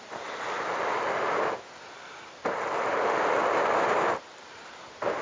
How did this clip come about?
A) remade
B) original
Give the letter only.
B